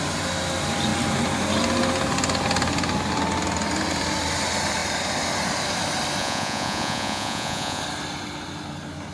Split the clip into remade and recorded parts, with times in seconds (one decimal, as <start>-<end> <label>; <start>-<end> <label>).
0.0-6.2 recorded; 6.2-7.8 remade; 7.8-9.1 recorded